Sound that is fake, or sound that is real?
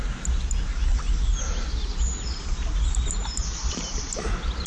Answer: real